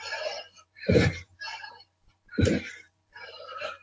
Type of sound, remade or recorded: remade